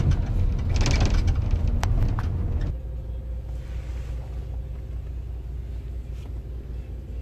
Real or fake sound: real